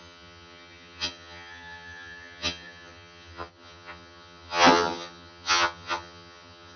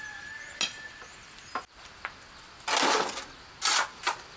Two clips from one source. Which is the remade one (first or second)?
first